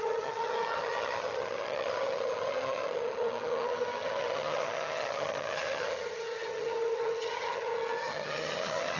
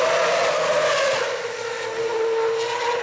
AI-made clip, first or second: first